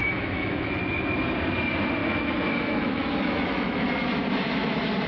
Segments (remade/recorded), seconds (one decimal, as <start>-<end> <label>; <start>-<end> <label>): 0.0-0.8 remade; 0.8-2.0 recorded; 2.0-3.9 remade; 3.9-5.1 recorded